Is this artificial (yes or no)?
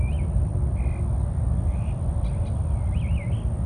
no